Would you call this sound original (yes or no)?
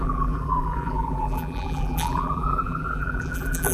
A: no